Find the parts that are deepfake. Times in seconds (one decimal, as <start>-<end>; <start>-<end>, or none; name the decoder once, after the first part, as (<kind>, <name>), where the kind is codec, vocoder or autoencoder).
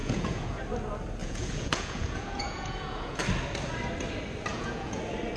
0.0-0.6 (vocoder, Vocos); 1.2-3.2; 4.5-5.0